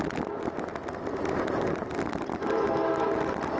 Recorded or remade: recorded